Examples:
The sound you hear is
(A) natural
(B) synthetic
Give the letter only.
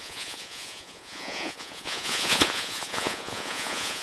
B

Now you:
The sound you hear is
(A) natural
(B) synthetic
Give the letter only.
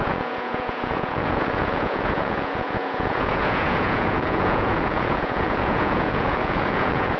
B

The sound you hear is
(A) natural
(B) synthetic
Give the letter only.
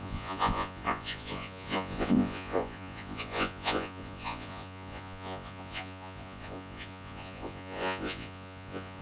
B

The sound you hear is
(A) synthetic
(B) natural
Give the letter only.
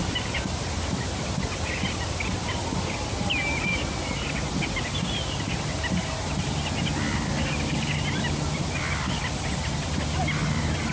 B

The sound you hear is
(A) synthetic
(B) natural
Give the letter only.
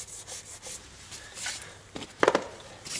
B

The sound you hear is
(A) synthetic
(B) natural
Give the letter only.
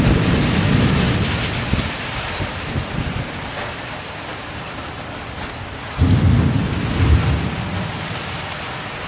B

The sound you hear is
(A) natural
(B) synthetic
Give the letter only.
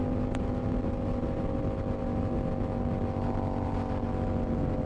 A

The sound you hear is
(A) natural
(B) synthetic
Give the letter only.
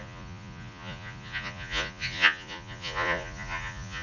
B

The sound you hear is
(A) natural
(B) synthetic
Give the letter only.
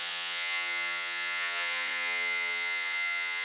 B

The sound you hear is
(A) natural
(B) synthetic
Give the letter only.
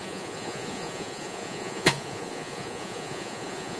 B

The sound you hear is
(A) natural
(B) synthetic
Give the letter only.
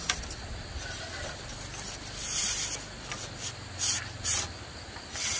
A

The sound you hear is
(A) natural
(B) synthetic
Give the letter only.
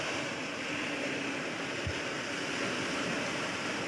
A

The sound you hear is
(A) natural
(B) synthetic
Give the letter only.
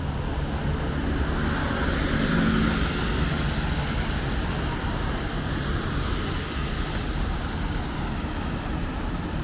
A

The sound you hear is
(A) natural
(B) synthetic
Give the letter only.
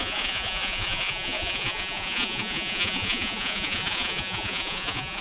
B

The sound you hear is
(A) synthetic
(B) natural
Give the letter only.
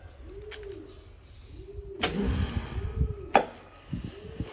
B